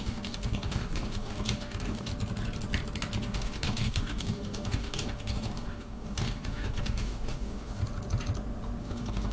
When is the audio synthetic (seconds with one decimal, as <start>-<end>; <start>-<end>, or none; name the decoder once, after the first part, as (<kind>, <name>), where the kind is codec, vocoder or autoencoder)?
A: 0.0-2.1 (codec, DAC); 3.2-7.8; 8.8-9.3